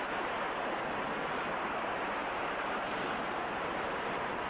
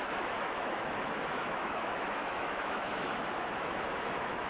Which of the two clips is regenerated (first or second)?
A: second